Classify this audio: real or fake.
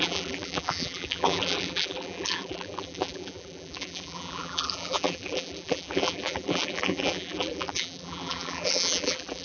fake